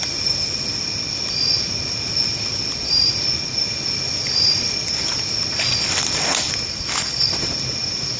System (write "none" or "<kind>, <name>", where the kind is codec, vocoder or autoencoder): none